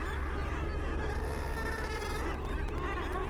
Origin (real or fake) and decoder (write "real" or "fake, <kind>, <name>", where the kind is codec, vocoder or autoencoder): real